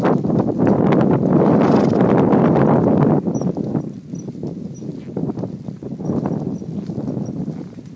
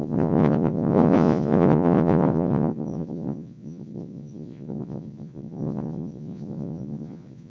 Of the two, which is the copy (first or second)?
second